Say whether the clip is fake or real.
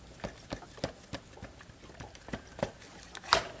real